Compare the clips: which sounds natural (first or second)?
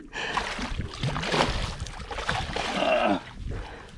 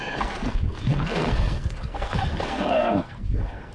first